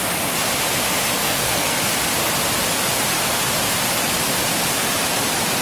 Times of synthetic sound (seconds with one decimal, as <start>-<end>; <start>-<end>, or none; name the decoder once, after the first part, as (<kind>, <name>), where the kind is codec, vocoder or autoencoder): 1.2-1.8 (codec, SNAC)